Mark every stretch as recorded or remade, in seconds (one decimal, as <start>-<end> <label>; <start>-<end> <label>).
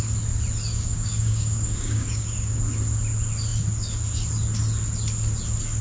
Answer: 0.0-0.7 recorded; 0.7-2.6 remade; 2.6-5.8 recorded